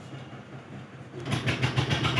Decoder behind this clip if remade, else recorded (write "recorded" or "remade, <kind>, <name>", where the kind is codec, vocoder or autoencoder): recorded